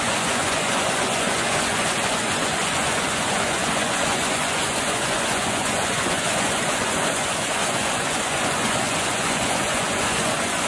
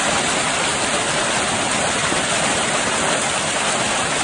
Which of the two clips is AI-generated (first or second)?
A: first